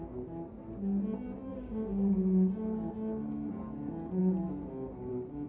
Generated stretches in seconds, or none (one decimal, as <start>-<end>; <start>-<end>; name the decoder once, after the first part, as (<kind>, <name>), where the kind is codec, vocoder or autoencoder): 1.5-2.9 (codec, DAC)